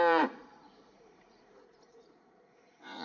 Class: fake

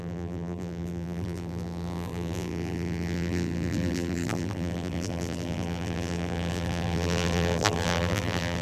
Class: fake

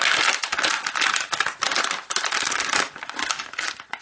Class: real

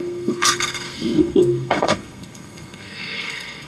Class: fake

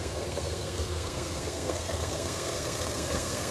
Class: fake